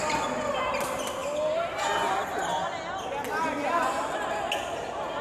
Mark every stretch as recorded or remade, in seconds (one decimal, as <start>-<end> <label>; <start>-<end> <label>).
0.0-5.2 recorded